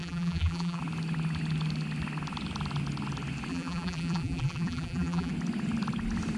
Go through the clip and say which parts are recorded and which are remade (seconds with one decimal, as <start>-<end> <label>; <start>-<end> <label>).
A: 0.0-0.8 remade; 0.8-3.5 recorded; 3.5-5.3 remade; 5.3-6.4 recorded